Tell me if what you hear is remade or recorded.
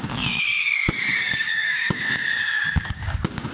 remade